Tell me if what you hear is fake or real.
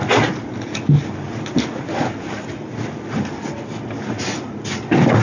real